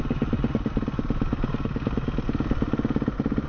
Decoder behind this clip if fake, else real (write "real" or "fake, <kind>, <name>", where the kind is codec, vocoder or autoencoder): real